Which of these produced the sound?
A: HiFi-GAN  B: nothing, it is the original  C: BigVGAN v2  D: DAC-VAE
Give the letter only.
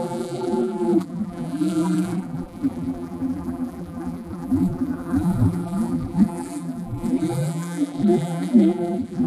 C